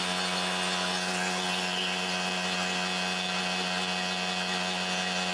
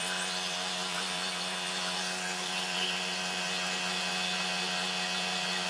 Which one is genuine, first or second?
first